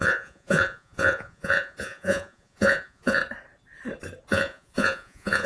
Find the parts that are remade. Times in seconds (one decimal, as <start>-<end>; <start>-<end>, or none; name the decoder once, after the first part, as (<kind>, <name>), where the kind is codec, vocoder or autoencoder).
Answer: 0.0-3.2 (vocoder, Vocos); 4.3-5.5